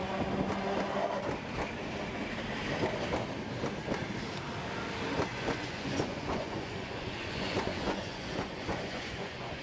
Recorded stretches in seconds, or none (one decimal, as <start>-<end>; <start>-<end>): 0.0-5.3